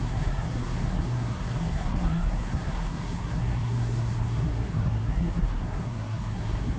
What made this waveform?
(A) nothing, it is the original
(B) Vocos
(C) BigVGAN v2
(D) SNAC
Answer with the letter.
D